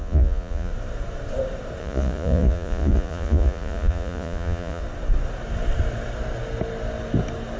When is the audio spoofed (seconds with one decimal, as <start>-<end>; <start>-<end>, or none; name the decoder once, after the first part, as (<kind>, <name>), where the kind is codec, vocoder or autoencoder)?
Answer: 0.0-0.7 (vocoder, Vocos); 1.8-4.8